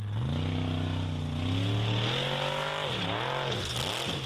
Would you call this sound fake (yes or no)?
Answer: no